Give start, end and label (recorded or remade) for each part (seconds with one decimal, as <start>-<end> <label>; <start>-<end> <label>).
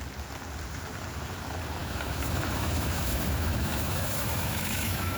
0.0-1.8 recorded; 1.8-5.2 remade